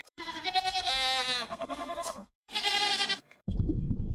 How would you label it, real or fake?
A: fake